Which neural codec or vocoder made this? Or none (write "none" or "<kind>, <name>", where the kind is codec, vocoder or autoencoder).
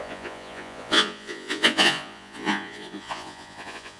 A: vocoder, Vocos